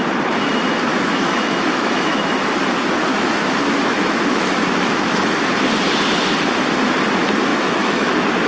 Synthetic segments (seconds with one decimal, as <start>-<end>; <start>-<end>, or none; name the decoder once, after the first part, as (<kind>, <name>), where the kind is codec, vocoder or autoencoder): 0.9-2.2 (autoencoder, DAC-VAE); 3.1-5.5; 7.5-8.1